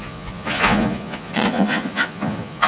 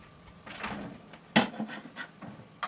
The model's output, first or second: first